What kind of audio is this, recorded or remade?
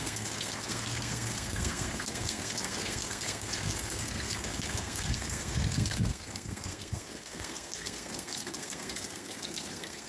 remade